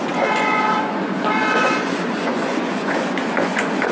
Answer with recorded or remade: remade